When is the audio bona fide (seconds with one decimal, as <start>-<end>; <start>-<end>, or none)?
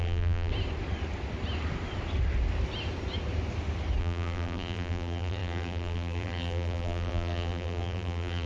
0.5-4.0